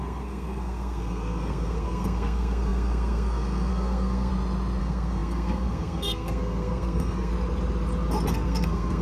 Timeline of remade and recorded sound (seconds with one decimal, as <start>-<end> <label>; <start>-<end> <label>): 0.0-4.3 remade; 4.3-4.8 recorded; 4.8-7.3 remade; 7.3-8.3 recorded; 8.3-9.0 remade